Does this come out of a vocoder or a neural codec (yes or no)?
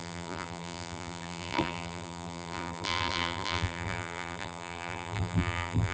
yes